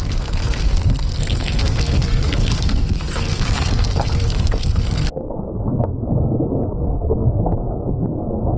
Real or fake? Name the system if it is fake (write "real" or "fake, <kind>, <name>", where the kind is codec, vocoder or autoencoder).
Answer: fake, codec, SNAC